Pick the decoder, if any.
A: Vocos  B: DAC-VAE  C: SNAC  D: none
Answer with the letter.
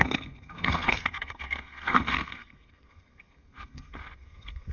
C